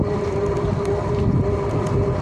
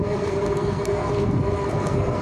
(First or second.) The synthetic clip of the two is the second